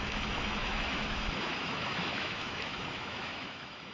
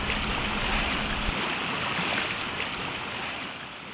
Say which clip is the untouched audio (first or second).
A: second